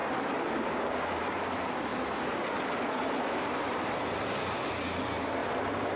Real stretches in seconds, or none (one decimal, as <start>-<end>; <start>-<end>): 1.2-5.4